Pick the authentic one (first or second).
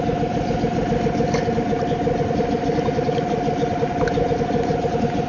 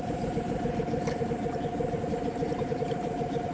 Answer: first